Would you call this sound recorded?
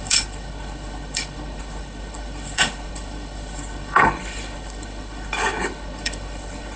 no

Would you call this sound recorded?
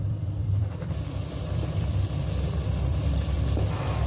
no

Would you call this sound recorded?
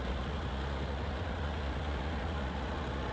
no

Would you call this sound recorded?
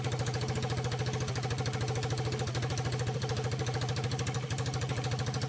yes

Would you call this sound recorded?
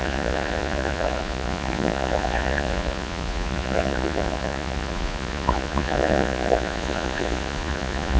no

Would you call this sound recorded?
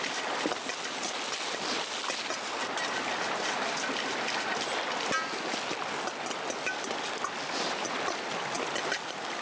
yes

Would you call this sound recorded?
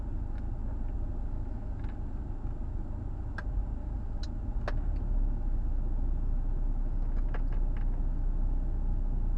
yes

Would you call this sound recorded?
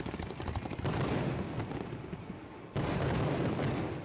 yes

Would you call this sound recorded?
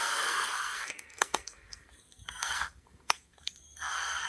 no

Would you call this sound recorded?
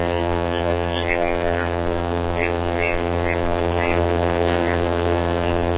no